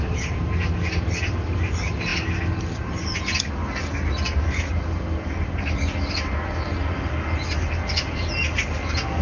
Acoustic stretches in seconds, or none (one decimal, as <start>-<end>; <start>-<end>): 0.0-9.2